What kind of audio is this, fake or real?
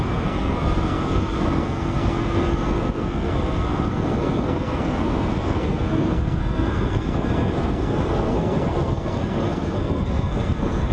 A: fake